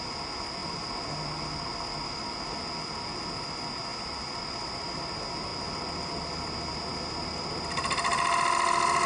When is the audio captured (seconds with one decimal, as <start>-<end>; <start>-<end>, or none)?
0.0-9.1

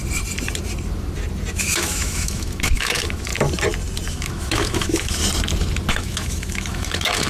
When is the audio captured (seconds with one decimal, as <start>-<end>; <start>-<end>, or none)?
0.0-1.5; 3.3-4.1; 5.2-5.9

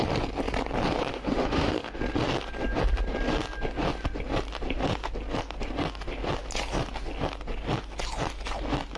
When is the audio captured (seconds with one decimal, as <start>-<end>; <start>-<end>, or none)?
0.0-1.1; 2.0-9.0